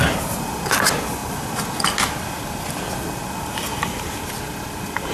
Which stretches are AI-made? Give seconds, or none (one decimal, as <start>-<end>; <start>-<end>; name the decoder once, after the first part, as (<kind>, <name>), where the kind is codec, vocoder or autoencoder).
none